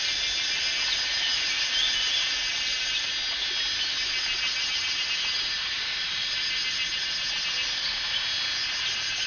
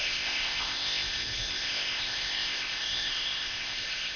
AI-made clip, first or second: second